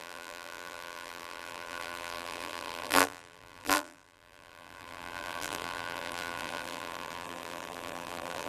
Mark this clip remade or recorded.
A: remade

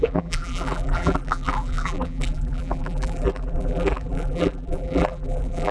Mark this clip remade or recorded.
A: remade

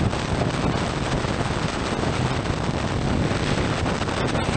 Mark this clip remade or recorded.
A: recorded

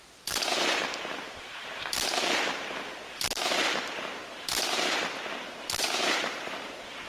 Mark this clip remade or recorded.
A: remade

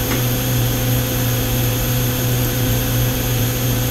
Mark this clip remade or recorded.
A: remade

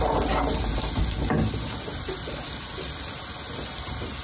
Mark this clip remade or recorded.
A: recorded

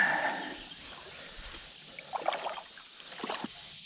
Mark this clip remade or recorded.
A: recorded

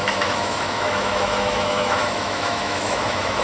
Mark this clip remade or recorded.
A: remade